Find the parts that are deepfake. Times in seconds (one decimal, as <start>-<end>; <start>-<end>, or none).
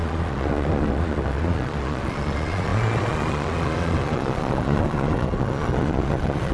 0.0-6.5